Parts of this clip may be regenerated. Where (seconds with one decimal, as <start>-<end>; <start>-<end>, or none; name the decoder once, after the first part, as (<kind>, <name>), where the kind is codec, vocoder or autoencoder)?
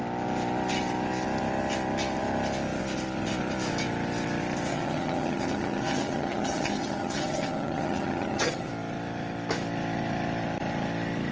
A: 4.7-8.7 (vocoder, HiFi-GAN)